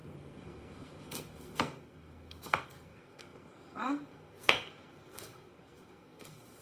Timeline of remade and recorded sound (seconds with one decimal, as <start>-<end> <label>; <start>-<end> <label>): 0.0-6.6 remade